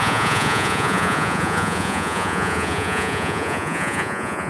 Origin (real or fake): fake